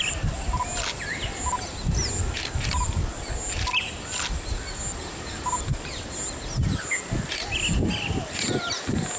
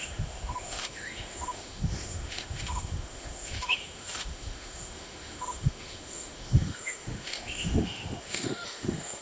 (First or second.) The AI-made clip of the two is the second